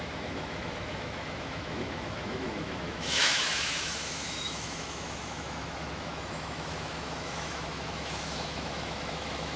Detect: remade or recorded remade